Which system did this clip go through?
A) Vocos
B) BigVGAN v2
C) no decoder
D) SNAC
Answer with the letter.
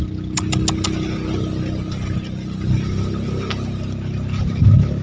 C